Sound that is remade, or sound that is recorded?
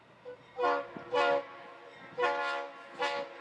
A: recorded